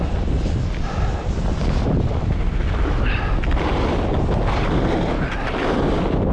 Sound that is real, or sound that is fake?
real